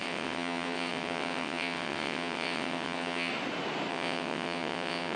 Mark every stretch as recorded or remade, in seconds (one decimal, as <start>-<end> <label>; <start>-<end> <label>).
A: 0.0-3.3 remade; 3.3-3.9 recorded; 3.9-5.2 remade